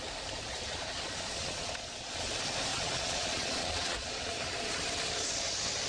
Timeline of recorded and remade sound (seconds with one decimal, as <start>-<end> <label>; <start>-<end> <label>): 0.0-0.5 recorded; 0.5-2.3 remade; 2.3-2.7 recorded; 2.7-4.7 remade; 4.7-5.9 recorded

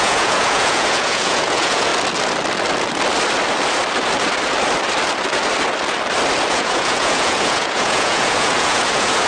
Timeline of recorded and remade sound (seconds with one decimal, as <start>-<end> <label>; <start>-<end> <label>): 0.0-1.9 remade; 1.9-6.5 recorded; 6.5-9.3 remade

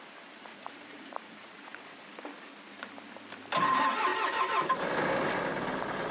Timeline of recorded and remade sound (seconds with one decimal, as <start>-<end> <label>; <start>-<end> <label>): 0.0-0.5 recorded; 0.5-1.9 remade; 1.9-6.1 recorded

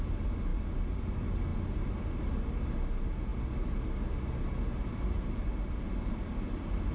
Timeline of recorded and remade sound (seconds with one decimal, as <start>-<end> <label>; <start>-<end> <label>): 0.0-6.9 recorded

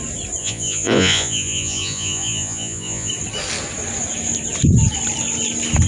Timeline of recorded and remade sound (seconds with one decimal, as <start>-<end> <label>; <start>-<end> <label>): 0.0-0.4 recorded; 0.4-3.1 remade; 3.1-5.9 recorded

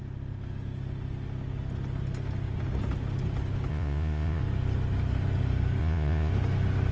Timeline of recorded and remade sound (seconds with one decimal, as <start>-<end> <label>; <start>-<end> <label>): 0.0-3.7 recorded; 3.7-4.4 remade; 4.4-5.8 recorded; 5.8-6.3 remade; 6.3-6.9 recorded